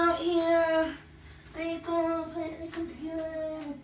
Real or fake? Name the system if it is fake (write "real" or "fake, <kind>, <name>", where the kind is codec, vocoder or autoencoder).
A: real